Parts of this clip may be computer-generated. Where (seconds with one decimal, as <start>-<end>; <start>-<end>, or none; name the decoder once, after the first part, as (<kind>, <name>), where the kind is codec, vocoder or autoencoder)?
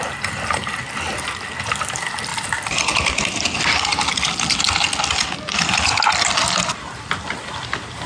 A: none